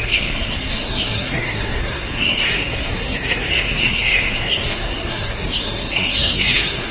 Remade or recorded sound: remade